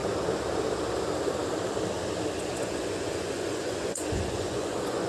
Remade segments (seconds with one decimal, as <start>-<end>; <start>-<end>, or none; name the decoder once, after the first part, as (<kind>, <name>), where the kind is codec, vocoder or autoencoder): 2.4-5.1 (vocoder, Vocos)